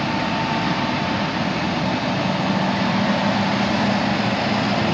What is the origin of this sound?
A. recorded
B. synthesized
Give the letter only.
A